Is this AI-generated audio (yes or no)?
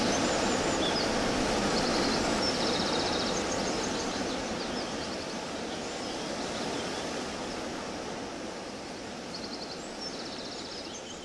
no